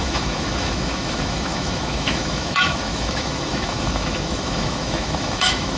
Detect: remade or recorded remade